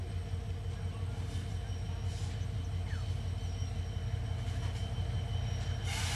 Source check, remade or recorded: recorded